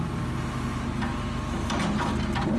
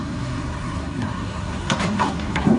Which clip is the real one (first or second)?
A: first